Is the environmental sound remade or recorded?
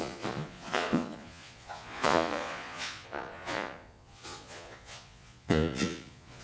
remade